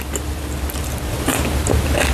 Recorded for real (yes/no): yes